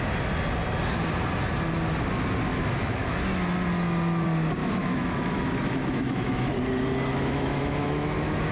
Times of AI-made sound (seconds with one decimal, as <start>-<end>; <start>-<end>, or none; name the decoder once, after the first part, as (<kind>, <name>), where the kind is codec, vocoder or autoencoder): 2.5-3.2 (autoencoder, DAC-VAE); 4.6-6.5; 7.1-8.5